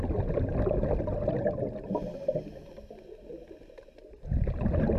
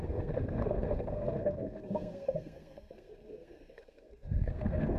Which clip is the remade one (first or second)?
second